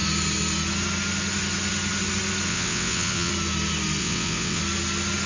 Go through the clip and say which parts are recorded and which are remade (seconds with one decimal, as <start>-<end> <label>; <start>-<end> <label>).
0.0-2.5 recorded; 2.5-3.3 remade; 3.3-4.0 recorded; 4.0-4.6 remade; 4.6-5.3 recorded